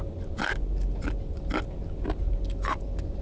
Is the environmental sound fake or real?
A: real